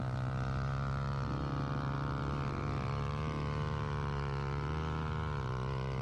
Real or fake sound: real